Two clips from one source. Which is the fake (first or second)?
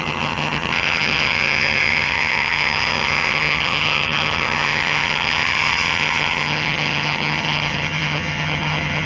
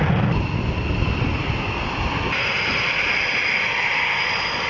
first